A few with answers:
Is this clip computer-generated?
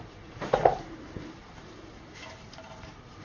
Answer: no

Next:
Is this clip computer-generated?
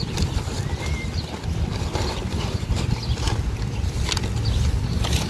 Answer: no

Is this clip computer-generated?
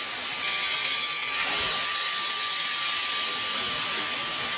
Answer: no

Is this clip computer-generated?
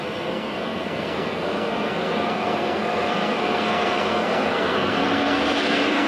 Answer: yes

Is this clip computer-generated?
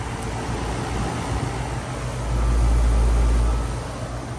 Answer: no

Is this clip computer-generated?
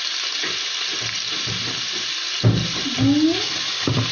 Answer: no